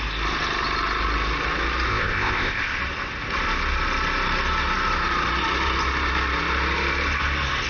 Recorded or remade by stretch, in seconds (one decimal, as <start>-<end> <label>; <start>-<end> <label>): 0.0-1.9 recorded; 1.9-2.8 remade; 2.8-7.7 recorded

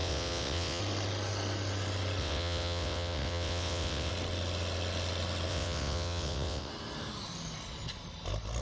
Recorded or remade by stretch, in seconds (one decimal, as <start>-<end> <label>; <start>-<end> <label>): 0.0-0.8 remade; 0.8-2.2 recorded; 2.2-4.1 remade; 4.1-5.5 recorded; 5.5-6.7 remade; 6.7-8.6 recorded

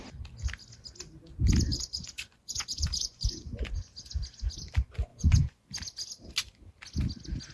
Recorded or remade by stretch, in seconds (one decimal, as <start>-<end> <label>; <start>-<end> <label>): 0.0-1.7 recorded; 1.7-3.7 remade; 3.7-5.1 recorded; 5.1-5.7 remade; 5.7-7.5 recorded

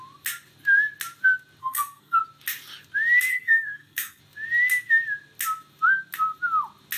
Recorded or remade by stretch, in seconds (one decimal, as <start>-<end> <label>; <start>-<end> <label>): 0.0-1.6 recorded; 1.6-2.2 remade; 2.2-3.3 recorded; 3.3-4.2 remade; 4.2-7.0 recorded

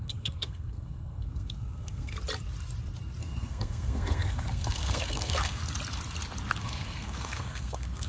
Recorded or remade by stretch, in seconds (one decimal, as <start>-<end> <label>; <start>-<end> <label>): 0.0-2.1 remade; 2.1-3.2 recorded; 3.2-5.6 remade; 5.6-6.6 recorded; 6.6-8.1 remade

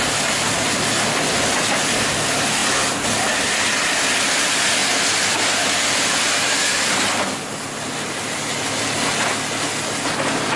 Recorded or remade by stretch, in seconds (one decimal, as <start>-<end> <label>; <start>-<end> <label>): 0.0-10.6 recorded